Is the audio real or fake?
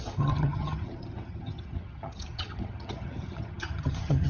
fake